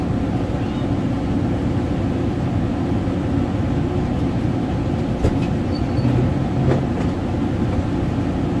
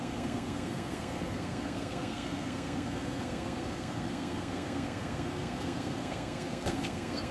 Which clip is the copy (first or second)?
second